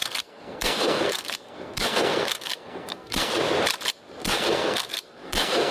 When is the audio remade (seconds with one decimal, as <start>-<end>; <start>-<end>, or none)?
0.0-3.4; 4.2-5.7